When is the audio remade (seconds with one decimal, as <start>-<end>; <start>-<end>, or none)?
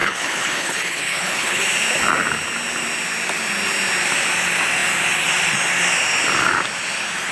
0.0-1.6